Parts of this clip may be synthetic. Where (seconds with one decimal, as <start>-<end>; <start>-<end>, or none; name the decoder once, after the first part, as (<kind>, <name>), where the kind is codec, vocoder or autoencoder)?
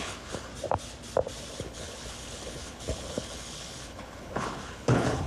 0.0-0.5 (codec, HILCodec); 1.5-5.3